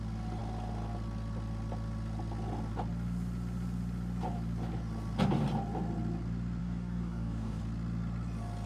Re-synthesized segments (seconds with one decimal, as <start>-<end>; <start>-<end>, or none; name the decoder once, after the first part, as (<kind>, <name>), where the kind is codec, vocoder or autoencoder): 6.6-7.6 (codec, DAC)